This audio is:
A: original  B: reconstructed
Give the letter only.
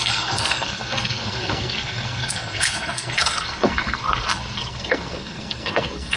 B